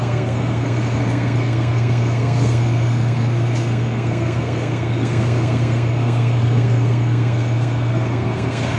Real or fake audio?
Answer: fake